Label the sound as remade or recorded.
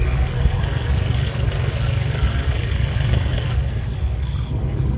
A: remade